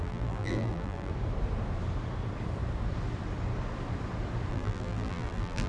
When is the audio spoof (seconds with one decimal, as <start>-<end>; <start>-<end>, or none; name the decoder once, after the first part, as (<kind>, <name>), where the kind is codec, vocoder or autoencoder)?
0.0-1.1 (vocoder, BigVGAN v2); 4.5-5.7